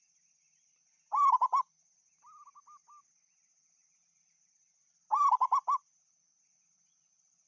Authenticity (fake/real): real